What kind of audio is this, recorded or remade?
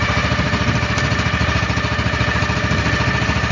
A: recorded